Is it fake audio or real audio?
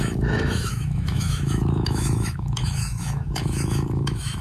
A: fake